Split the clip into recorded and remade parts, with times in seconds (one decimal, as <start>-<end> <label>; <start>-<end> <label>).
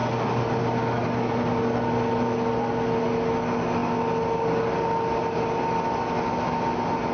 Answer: 0.0-7.1 recorded